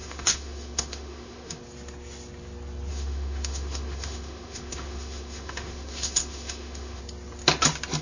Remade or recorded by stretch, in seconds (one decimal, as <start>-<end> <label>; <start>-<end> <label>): 0.0-1.6 remade; 1.6-2.9 recorded; 2.9-7.0 remade; 7.0-8.0 recorded